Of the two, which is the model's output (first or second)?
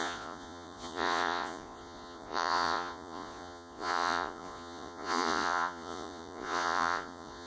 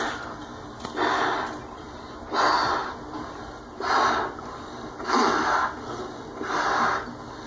first